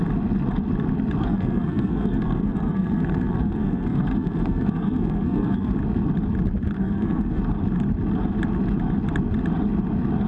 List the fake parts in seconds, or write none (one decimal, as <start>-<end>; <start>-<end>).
1.3-5.7; 6.8-7.4